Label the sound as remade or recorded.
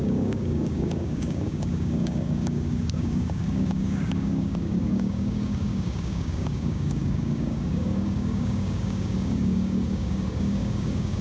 remade